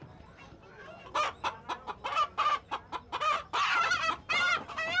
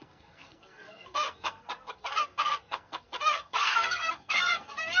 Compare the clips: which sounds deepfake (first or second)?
second